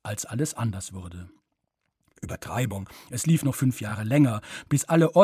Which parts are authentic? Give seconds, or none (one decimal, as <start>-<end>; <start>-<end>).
0.0-2.1; 2.9-5.2

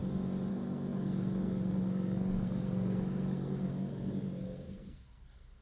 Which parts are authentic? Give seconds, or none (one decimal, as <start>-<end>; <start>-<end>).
0.0-0.5